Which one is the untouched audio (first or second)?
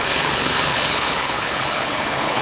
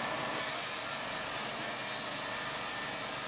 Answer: second